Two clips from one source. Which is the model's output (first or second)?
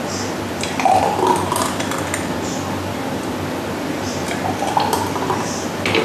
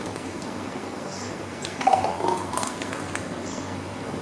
second